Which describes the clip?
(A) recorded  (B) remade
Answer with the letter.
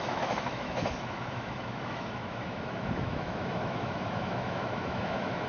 B